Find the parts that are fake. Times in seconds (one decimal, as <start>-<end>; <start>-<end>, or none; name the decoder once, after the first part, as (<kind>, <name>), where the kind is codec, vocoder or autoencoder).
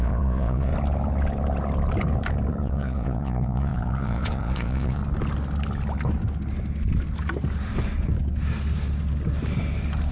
0.0-0.7 (vocoder, Vocos); 2.6-5.0